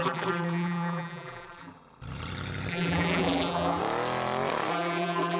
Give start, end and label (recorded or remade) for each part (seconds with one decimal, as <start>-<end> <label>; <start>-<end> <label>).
0.0-1.7 remade; 1.7-2.7 recorded; 2.7-3.8 remade; 3.8-4.7 recorded; 4.7-5.4 remade